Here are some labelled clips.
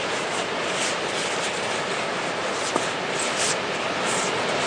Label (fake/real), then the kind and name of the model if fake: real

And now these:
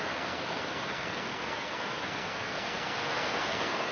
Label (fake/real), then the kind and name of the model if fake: fake, codec, SNAC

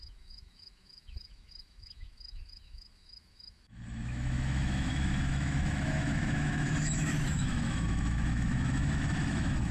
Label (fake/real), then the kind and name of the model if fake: fake, autoencoder, DAC-VAE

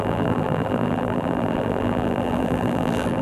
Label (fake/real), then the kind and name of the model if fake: fake, vocoder, BigVGAN v2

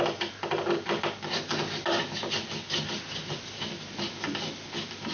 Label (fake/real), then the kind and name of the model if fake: real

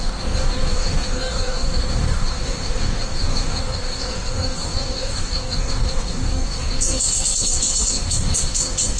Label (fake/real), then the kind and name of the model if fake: fake, codec, DAC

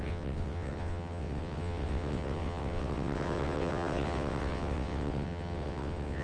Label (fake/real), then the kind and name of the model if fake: fake, vocoder, WaveNeXt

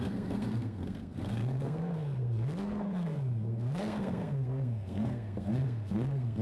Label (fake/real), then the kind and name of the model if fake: fake, codec, SNAC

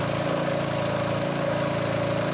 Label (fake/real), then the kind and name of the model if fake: real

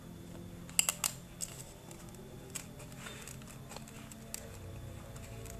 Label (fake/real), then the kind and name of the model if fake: real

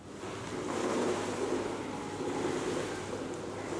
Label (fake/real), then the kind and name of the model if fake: real